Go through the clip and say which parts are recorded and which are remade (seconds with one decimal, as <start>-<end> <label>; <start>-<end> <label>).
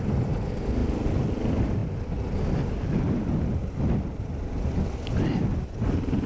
0.0-6.3 recorded